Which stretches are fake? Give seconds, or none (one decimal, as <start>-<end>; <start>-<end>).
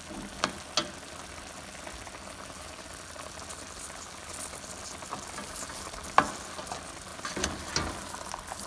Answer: none